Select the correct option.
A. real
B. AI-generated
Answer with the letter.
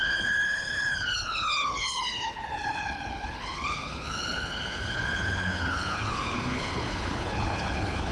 B